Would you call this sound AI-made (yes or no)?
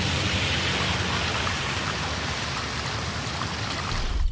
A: no